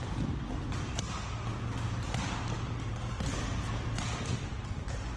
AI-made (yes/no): no